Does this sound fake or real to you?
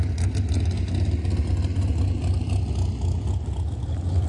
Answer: real